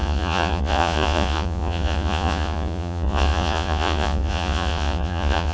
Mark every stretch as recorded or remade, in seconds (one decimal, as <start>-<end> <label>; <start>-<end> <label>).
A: 0.0-5.5 remade